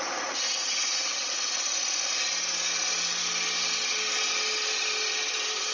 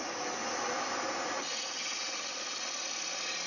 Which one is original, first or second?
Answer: first